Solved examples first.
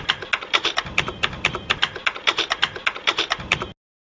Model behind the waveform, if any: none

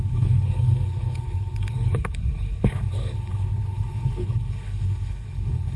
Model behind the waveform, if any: codec, HILCodec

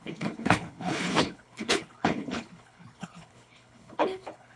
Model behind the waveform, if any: codec, HILCodec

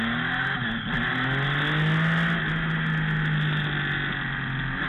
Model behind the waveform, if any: none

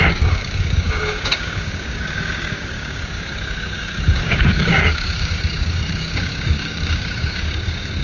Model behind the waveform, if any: codec, DAC